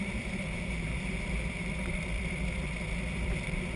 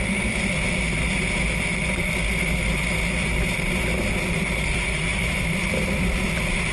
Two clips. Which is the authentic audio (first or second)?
second